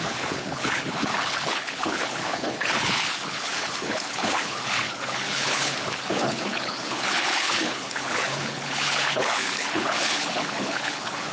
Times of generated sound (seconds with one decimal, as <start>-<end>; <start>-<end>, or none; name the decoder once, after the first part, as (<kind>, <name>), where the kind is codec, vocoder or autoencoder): 0.0-11.3 (codec, HILCodec)